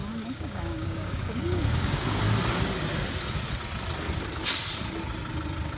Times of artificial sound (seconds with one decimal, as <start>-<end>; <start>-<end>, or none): 0.0-2.2